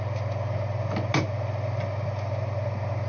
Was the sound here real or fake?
real